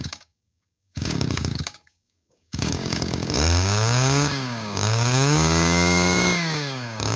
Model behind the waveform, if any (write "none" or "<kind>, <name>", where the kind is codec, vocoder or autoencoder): codec, DAC